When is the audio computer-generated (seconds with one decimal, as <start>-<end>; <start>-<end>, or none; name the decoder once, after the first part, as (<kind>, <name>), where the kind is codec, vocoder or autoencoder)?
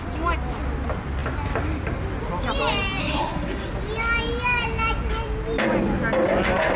3.0-3.7 (codec, SNAC)